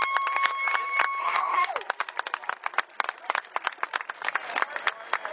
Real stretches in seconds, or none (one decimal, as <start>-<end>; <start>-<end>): 0.0-1.2; 1.7-5.3